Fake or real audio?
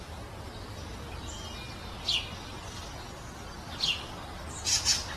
real